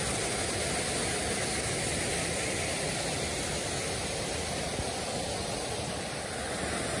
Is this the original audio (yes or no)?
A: yes